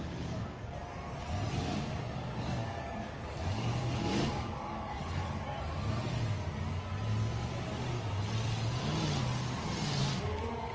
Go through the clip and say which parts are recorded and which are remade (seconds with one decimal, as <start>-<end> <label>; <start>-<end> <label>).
0.0-0.8 remade; 0.8-1.5 recorded; 1.5-5.0 remade; 5.0-10.0 recorded; 10.0-10.7 remade